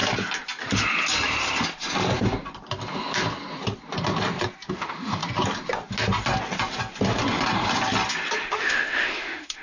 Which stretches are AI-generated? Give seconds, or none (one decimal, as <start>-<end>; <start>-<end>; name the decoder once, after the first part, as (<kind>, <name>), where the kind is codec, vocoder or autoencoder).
4.7-5.2 (autoencoder, DAC-VAE); 8.4-9.6